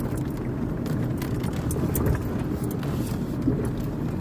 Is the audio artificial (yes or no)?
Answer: no